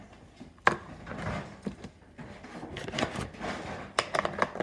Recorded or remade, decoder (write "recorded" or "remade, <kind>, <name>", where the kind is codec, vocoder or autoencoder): recorded